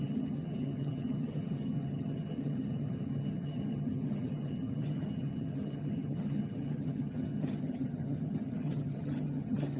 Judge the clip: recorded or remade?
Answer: remade